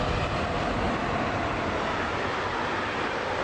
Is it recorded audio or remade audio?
recorded